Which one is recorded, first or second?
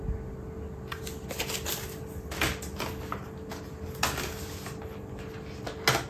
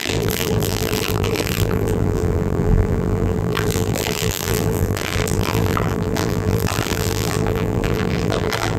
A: first